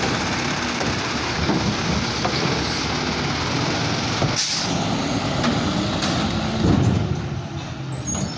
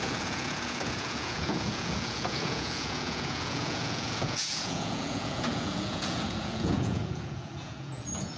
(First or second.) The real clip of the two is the first